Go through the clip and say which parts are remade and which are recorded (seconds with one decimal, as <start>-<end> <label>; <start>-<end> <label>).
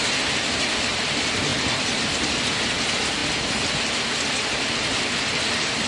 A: 0.0-5.9 recorded